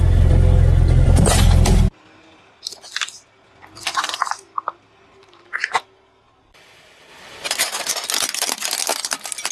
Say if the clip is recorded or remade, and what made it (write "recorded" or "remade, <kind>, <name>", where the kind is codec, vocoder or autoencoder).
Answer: recorded